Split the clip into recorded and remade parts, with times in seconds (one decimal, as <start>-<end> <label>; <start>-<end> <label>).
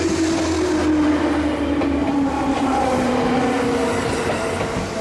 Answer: 0.0-2.0 recorded; 2.0-3.1 remade; 3.1-5.0 recorded